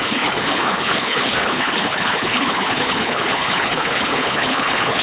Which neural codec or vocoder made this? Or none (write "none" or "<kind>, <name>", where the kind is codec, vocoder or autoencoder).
codec, HILCodec